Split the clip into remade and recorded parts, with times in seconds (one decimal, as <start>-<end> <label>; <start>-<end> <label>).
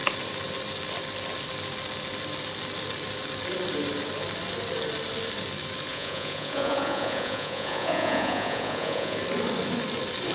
0.0-5.9 recorded; 5.9-9.2 remade; 9.2-10.3 recorded